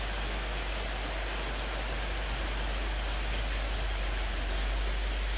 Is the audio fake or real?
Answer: real